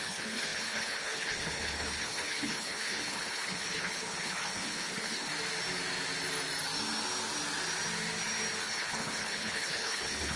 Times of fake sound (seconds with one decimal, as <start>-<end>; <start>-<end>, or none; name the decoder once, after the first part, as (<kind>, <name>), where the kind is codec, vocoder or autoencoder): 0.0-5.3 (codec, HILCodec); 8.6-10.4